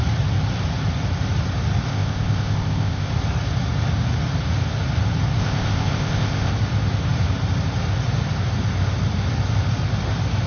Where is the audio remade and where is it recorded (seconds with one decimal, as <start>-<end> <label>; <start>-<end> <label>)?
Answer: 0.0-1.9 recorded; 1.9-3.1 remade; 3.1-5.4 recorded; 5.4-6.5 remade; 6.5-10.5 recorded